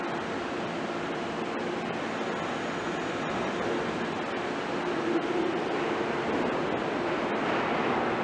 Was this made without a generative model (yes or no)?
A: yes